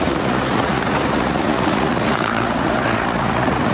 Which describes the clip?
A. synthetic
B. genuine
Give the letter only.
A